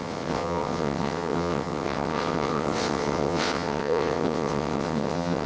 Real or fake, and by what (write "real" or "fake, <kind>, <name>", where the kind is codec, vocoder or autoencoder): fake, vocoder, WaveNeXt